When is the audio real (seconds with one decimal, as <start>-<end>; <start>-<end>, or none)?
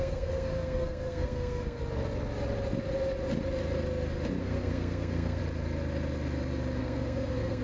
1.8-4.4; 5.4-6.8